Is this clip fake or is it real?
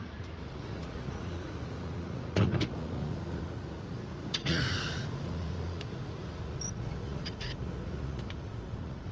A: fake